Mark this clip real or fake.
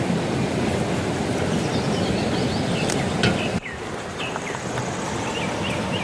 real